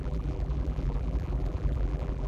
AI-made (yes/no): yes